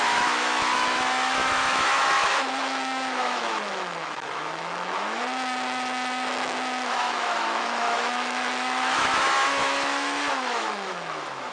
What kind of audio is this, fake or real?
fake